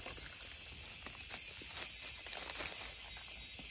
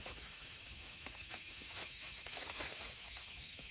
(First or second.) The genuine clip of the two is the first